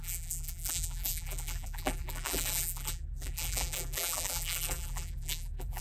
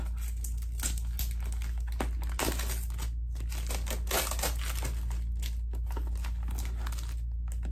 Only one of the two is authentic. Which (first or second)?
second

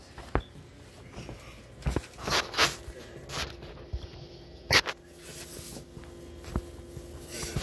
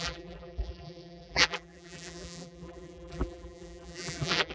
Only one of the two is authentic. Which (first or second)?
first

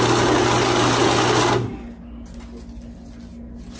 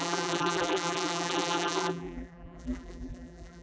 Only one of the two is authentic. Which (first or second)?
first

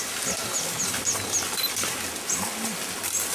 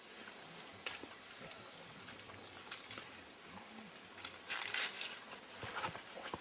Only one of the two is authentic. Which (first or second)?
first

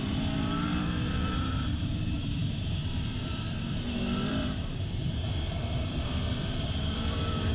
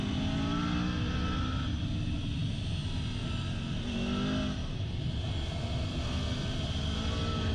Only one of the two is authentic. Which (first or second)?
second